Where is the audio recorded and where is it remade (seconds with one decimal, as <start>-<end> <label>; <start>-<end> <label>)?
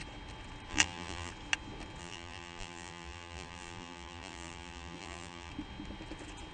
0.0-0.7 recorded; 0.7-1.3 remade; 1.3-2.0 recorded; 2.0-5.5 remade; 5.5-6.5 recorded